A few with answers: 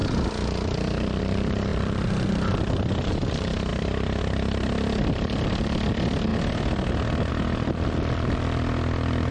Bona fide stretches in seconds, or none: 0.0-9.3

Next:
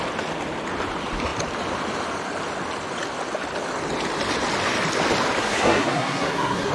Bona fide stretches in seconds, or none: 0.0-5.4

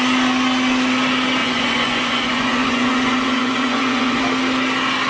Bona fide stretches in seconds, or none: 0.0-1.4; 4.2-5.1

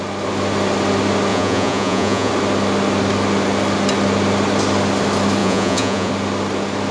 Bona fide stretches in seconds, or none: 0.0-1.3; 2.3-5.4; 6.1-6.9

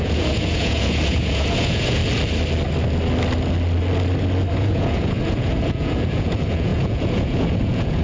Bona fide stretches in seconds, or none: 2.0-4.5

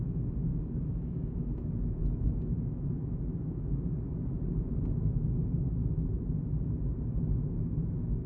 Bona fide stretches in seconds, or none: 0.0-0.5; 3.9-8.3